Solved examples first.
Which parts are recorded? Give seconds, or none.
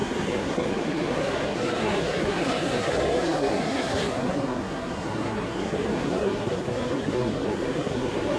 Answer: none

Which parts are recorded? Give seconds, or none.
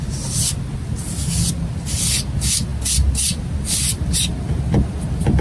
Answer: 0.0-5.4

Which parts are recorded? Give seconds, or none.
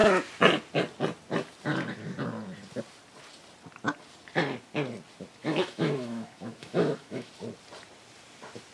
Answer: 0.0-5.4; 7.3-8.7